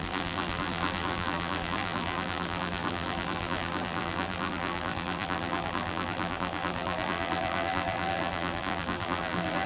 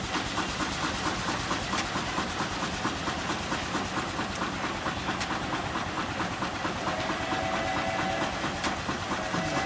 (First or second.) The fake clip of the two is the first